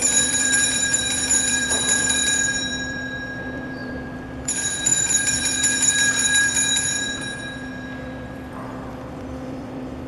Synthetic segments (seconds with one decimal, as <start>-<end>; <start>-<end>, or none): 0.0-10.1